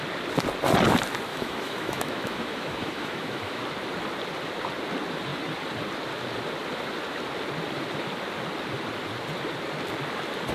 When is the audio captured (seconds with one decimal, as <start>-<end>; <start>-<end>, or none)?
0.0-1.3; 3.6-10.5